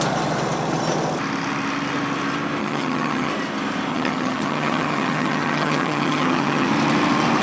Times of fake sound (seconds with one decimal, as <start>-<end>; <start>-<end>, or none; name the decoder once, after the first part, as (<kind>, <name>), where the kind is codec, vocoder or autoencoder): 2.6-3.3 (vocoder, HiFi-GAN); 3.9-6.7